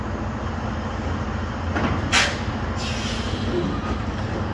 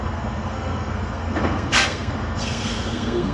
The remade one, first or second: second